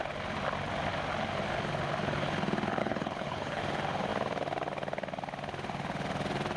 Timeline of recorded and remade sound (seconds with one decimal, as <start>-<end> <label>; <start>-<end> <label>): 0.0-2.8 recorded; 2.8-3.6 remade; 3.6-6.6 recorded